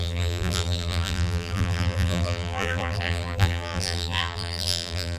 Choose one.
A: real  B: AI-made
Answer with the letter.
B